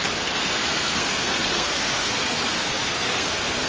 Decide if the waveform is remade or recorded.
remade